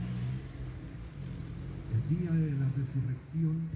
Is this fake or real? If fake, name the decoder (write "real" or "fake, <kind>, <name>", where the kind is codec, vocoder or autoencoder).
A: real